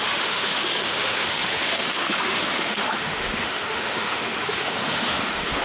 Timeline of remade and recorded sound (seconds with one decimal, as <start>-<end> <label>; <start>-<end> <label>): 0.0-5.6 remade